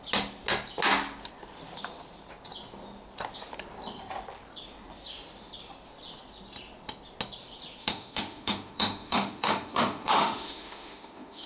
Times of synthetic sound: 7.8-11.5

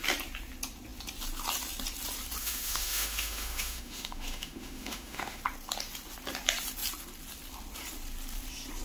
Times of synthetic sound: 2.4-5.4

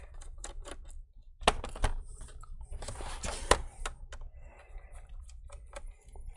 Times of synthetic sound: none

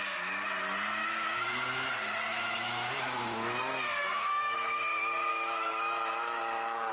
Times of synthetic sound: 1.0-1.9; 2.3-3.6; 4.0-4.8; 5.3-6.9

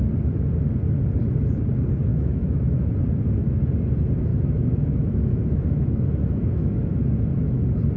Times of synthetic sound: 2.1-2.9; 4.3-6.8